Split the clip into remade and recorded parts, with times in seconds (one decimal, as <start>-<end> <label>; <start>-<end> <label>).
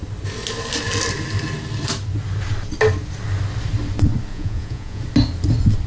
0.0-4.3 recorded; 4.3-5.0 remade; 5.0-5.9 recorded